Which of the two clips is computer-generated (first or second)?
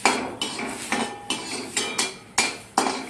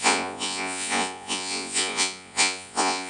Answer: second